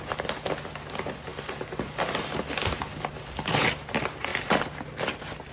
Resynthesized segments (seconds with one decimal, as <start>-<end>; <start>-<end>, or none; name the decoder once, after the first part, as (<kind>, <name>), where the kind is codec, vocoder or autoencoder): none